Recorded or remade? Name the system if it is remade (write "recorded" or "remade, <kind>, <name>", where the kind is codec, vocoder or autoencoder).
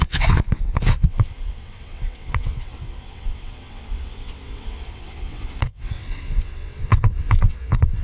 remade, vocoder, WaveNeXt